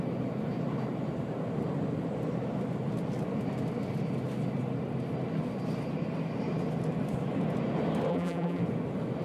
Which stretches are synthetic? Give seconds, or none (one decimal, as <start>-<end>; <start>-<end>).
8.1-8.6